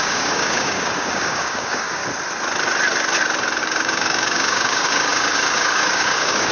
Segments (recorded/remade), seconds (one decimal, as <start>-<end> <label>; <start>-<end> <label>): 0.0-2.0 remade; 2.0-3.6 recorded; 3.6-6.5 remade